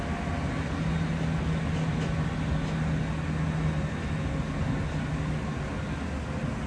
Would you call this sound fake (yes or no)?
no